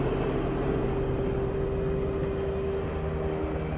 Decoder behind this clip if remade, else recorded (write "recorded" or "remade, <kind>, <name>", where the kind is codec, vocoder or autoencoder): recorded